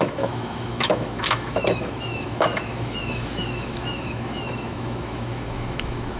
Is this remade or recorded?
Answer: remade